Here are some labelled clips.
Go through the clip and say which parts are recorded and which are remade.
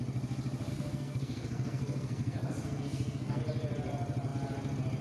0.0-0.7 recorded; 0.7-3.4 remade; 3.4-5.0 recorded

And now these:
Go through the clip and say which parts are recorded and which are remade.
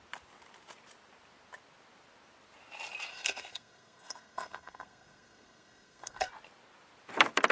0.0-3.1 recorded; 3.1-6.3 remade; 6.3-7.5 recorded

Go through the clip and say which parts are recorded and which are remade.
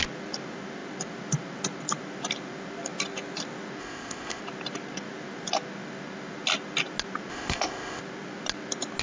0.0-3.8 recorded; 3.8-4.4 remade; 4.4-7.3 recorded; 7.3-8.0 remade; 8.0-9.0 recorded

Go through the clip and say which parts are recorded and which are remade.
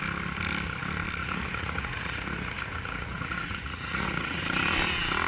0.0-1.2 recorded; 1.2-4.4 remade; 4.4-5.3 recorded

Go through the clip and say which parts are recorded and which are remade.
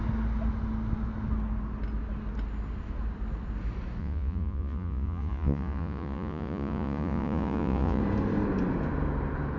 0.0-4.0 recorded; 4.0-8.0 remade; 8.0-9.6 recorded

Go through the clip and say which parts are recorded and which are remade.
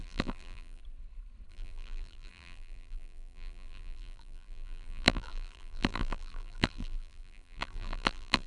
0.0-0.8 remade; 0.8-1.5 recorded; 1.5-8.5 remade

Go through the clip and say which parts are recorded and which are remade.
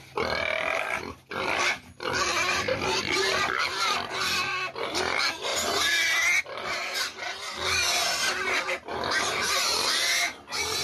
0.0-10.8 recorded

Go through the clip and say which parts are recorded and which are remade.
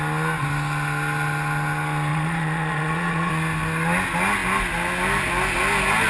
0.0-2.1 recorded; 2.1-3.3 remade; 3.3-6.1 recorded